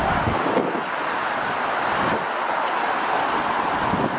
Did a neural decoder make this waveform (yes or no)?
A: no